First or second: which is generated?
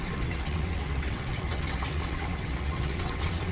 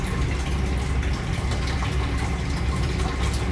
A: first